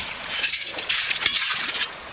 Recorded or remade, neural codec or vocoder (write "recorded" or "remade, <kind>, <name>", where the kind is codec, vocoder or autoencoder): remade, vocoder, Vocos